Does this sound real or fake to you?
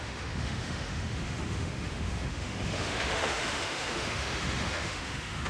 fake